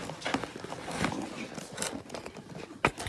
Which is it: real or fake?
real